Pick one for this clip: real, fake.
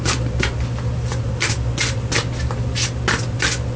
real